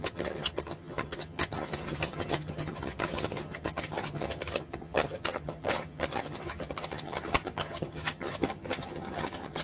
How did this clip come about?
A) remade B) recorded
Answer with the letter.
A